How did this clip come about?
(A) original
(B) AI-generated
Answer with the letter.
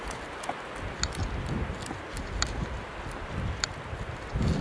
A